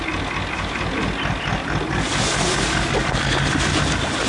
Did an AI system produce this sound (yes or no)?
no